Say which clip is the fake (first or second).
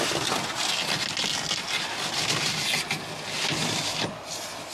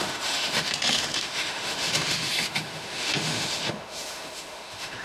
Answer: second